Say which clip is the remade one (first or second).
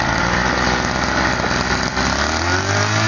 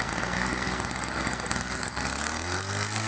second